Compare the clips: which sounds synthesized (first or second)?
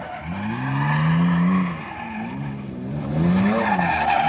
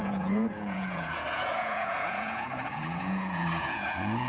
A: second